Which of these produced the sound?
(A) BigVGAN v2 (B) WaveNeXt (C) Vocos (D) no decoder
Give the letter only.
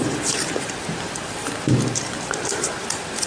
D